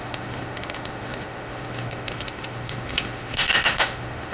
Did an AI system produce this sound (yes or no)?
yes